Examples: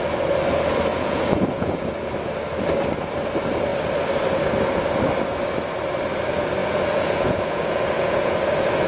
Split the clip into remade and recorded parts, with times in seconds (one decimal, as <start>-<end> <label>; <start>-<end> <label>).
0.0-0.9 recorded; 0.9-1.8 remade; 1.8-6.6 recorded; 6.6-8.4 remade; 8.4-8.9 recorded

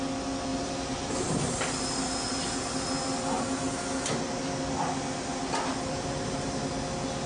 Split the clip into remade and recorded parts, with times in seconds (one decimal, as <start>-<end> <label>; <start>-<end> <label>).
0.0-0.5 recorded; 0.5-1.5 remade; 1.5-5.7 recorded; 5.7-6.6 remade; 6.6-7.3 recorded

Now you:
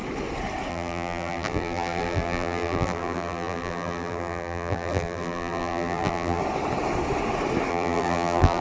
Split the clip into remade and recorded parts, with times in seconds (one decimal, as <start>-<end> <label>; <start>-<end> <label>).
0.0-0.7 recorded; 0.7-6.4 remade; 6.4-7.7 recorded; 7.7-8.6 remade

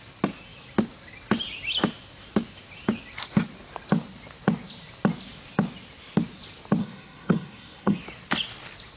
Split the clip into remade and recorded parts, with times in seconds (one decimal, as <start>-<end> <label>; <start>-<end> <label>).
0.0-6.8 recorded; 6.8-8.0 remade; 8.0-9.0 recorded

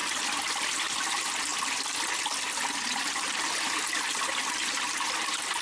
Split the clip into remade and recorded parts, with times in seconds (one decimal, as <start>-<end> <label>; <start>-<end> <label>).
0.0-5.6 recorded

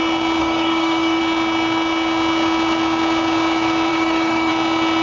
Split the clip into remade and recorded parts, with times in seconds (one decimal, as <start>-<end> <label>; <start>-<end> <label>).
0.0-0.4 recorded; 0.4-1.2 remade; 1.2-3.9 recorded; 3.9-4.5 remade; 4.5-5.0 recorded

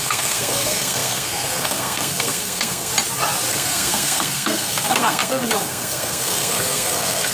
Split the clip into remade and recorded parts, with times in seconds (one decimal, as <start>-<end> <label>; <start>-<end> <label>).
0.0-2.9 remade; 2.9-3.5 recorded; 3.5-7.3 remade

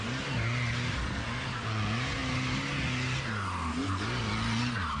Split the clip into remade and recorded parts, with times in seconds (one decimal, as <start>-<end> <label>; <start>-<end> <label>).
0.0-5.0 recorded